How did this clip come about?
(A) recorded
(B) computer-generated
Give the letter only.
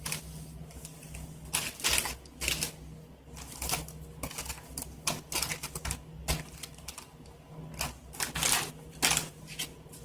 A